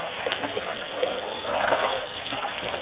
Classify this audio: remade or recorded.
remade